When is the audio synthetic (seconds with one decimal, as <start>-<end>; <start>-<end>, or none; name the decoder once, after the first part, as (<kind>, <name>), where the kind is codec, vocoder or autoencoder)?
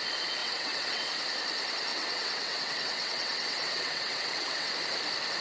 0.4-1.1 (vocoder, WaveNeXt); 1.9-4.7